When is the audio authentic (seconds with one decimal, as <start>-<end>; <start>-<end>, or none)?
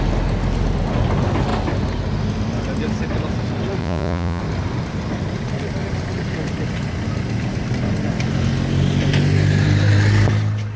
0.0-3.8; 4.4-10.8